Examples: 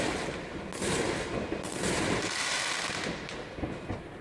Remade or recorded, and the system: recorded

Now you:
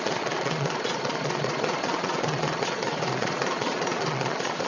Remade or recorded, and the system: remade, vocoder, Vocos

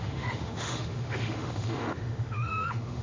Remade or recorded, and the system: remade, autoencoder, DAC-VAE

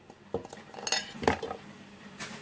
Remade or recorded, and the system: recorded